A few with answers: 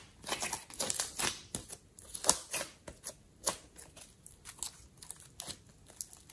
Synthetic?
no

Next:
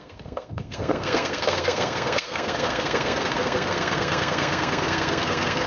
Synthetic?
yes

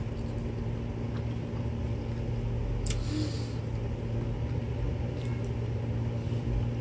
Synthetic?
no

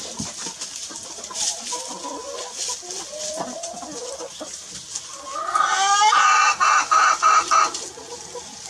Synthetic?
no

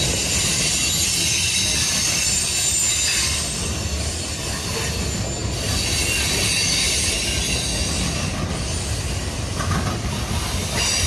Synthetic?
no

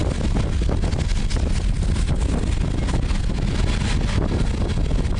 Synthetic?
no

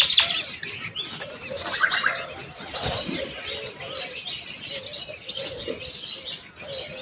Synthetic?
no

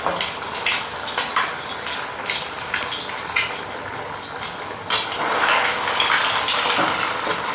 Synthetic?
no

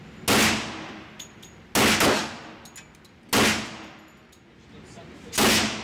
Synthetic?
no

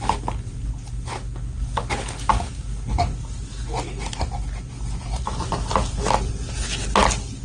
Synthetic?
no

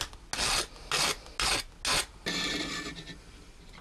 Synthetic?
no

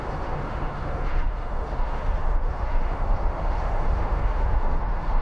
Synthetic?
yes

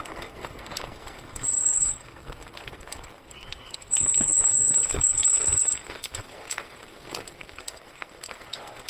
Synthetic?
yes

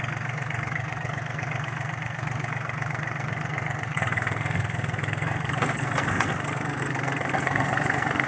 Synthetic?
yes